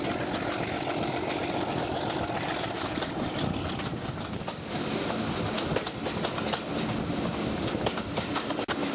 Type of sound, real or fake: real